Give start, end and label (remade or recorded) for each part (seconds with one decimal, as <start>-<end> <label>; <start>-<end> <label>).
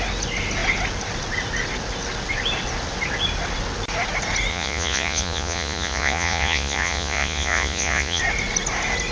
0.0-4.5 recorded; 4.5-8.2 remade; 8.2-9.1 recorded